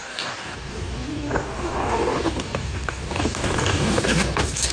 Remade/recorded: remade